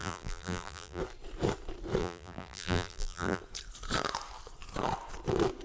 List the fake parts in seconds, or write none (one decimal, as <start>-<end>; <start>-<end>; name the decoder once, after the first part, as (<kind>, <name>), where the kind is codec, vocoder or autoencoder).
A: 0.0-1.0 (vocoder, BigVGAN v2); 2.0-3.4